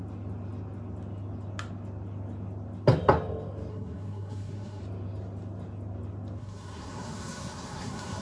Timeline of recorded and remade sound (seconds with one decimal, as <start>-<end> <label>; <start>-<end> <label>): 0.0-3.7 recorded; 3.7-4.8 remade; 4.8-6.4 recorded; 6.4-8.2 remade